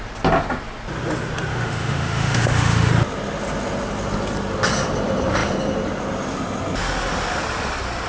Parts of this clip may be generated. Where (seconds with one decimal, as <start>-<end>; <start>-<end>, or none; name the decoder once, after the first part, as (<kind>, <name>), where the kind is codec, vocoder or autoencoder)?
1.5-2.9 (autoencoder, DAC-VAE)